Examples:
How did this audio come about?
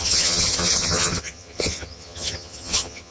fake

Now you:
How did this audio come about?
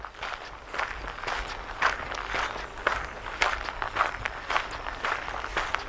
real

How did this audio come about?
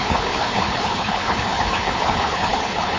fake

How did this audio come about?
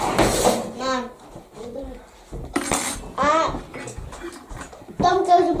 real